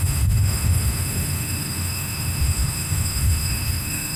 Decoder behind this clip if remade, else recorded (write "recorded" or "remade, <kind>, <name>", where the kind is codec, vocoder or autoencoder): remade, autoencoder, DAC-VAE